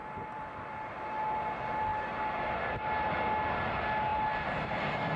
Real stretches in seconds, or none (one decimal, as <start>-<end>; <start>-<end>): 0.0-1.9; 2.5-4.1